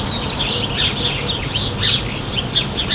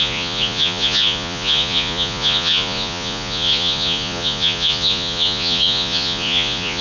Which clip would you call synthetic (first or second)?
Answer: second